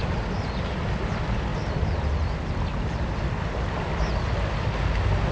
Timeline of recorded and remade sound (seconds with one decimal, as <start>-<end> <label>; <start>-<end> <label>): 0.0-5.3 recorded